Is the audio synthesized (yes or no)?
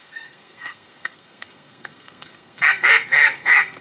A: yes